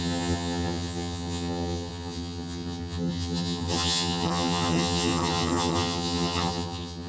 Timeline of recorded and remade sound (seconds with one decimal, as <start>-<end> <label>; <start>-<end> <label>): 0.0-7.1 remade